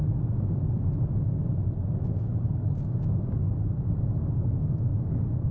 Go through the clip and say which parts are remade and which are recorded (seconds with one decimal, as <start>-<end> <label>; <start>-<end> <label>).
0.0-2.0 recorded; 2.0-3.4 remade; 3.4-4.3 recorded; 4.3-4.9 remade; 4.9-5.5 recorded